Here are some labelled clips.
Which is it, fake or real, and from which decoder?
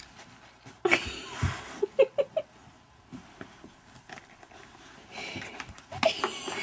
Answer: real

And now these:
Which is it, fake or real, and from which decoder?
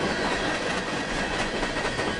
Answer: fake, vocoder, Vocos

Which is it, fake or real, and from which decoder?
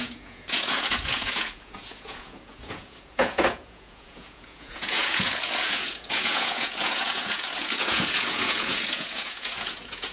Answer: fake, vocoder, Vocos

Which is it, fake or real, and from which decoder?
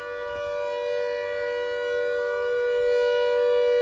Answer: real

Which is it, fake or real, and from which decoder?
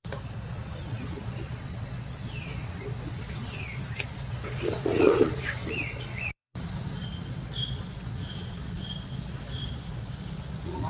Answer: fake, vocoder, Vocos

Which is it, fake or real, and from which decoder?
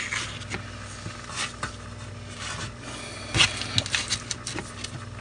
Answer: real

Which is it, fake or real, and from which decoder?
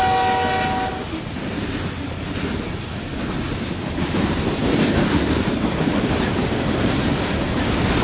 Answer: real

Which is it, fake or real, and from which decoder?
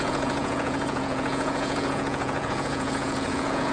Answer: fake, vocoder, Vocos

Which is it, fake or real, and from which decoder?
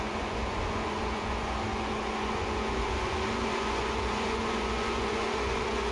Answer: fake, vocoder, Vocos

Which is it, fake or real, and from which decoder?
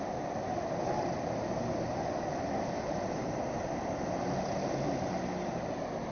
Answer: real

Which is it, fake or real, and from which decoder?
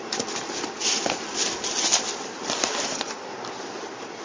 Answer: real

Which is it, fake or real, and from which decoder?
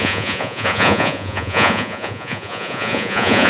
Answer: fake, vocoder, Vocos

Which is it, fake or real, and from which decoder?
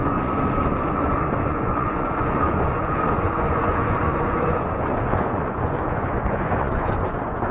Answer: fake, vocoder, Vocos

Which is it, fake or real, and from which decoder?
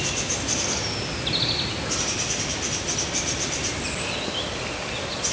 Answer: real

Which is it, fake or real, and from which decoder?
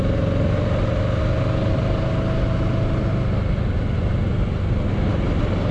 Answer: real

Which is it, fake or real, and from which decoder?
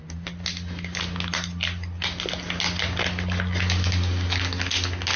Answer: real